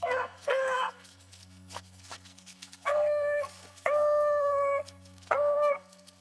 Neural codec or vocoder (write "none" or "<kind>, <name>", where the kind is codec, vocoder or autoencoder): codec, SNAC